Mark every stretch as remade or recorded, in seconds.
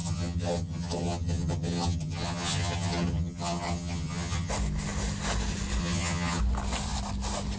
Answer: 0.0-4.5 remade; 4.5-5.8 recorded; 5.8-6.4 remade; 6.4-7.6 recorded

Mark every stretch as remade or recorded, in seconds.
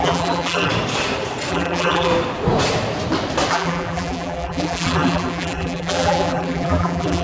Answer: 0.0-0.7 remade; 0.7-1.5 recorded; 1.5-2.1 remade; 2.1-3.5 recorded; 3.5-7.2 remade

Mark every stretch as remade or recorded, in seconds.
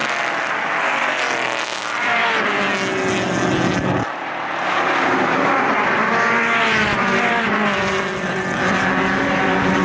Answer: 0.0-1.8 recorded; 1.8-2.2 remade; 2.2-3.7 recorded; 3.7-6.0 remade; 6.0-6.8 recorded; 6.8-9.8 remade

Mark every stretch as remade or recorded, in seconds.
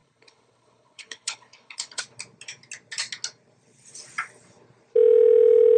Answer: 0.0-2.0 remade; 2.0-5.8 recorded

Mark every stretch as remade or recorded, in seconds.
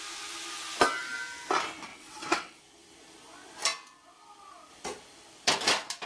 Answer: 0.0-1.9 recorded; 1.9-2.6 remade; 2.6-6.1 recorded